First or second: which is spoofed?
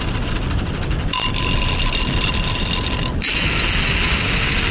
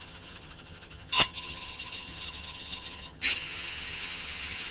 second